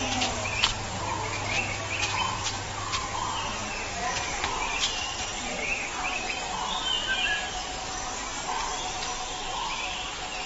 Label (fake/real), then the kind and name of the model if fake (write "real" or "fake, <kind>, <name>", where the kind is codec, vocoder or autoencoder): real